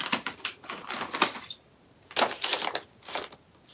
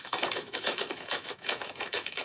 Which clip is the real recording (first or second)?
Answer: first